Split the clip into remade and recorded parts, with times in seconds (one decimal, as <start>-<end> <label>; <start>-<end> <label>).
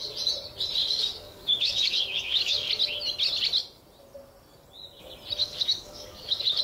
0.0-0.8 recorded; 0.8-2.7 remade; 2.7-5.4 recorded; 5.4-6.6 remade